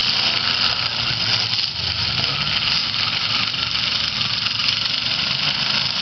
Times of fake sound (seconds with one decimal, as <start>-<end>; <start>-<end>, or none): 2.8-3.5; 4.6-6.0